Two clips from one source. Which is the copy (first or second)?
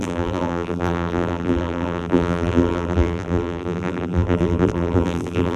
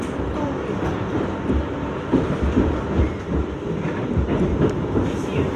first